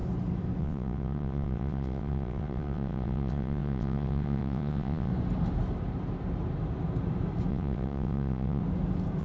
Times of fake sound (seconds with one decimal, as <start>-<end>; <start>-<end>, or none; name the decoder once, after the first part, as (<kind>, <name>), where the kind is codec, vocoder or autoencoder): 0.6-5.1 (vocoder, WaveNeXt); 7.5-8.6